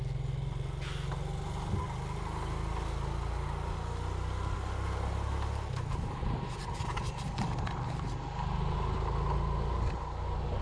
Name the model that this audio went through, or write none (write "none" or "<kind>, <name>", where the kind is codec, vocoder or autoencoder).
none